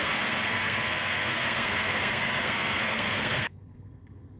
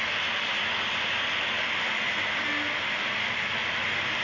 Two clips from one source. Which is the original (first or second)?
second